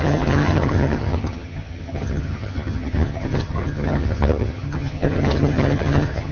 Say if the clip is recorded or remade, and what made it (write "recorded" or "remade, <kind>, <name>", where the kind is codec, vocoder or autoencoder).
remade, vocoder, HiFi-GAN